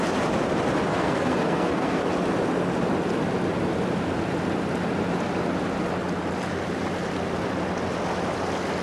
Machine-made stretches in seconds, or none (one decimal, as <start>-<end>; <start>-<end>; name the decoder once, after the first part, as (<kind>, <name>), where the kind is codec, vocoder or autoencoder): 0.9-2.0 (codec, SNAC)